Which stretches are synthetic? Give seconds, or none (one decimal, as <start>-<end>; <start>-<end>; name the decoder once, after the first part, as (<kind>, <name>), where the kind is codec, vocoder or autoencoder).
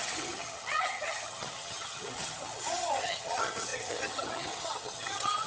0.0-5.5 (vocoder, HiFi-GAN)